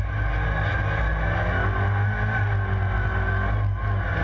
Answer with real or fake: real